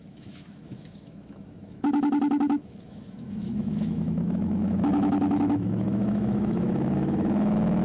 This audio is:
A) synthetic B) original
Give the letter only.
A